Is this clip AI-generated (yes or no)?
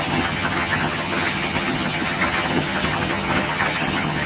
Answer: yes